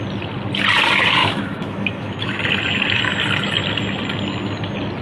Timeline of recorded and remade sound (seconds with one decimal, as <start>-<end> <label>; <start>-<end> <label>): 0.0-1.2 recorded; 1.2-2.4 remade; 2.4-5.0 recorded